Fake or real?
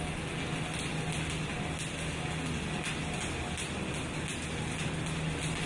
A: real